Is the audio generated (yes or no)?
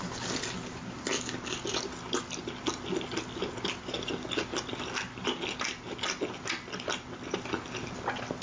no